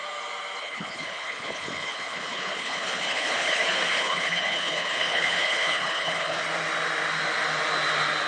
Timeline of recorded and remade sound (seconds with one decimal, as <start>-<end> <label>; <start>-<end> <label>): 0.0-0.6 recorded; 0.6-6.4 remade; 6.4-8.3 recorded